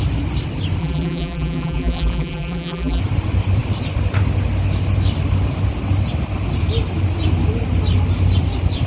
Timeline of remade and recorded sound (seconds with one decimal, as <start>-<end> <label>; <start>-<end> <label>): 0.0-0.8 recorded; 0.8-3.0 remade; 3.0-8.9 recorded